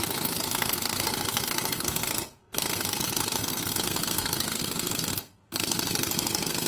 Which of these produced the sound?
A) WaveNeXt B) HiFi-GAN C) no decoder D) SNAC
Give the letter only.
D